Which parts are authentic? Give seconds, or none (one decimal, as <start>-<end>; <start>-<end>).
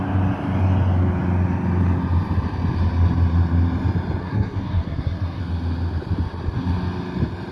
0.0-4.2; 5.4-7.5